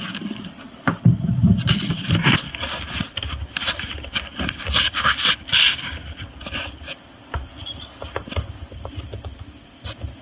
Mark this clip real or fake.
real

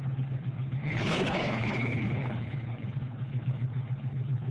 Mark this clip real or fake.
fake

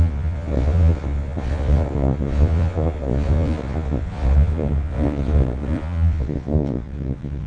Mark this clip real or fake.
fake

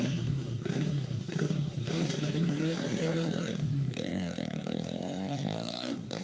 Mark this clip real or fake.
fake